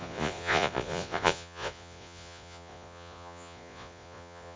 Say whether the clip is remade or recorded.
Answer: remade